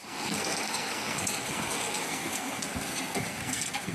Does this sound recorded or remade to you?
remade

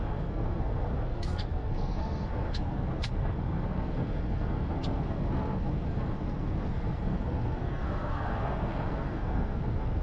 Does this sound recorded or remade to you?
remade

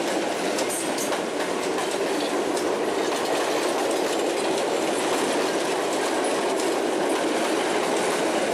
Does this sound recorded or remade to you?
recorded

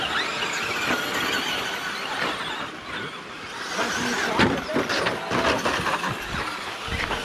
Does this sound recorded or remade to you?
recorded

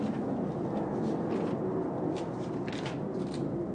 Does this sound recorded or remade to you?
recorded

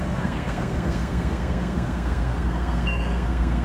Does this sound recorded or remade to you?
remade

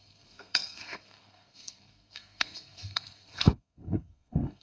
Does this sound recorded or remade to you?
remade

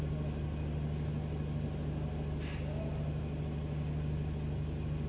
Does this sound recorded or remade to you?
recorded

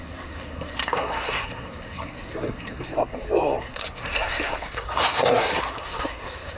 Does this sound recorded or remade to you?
remade